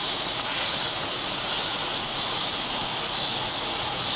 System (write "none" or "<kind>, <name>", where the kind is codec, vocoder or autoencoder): vocoder, Vocos